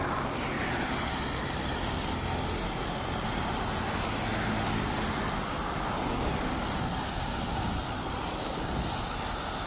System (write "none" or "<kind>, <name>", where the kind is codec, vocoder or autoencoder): none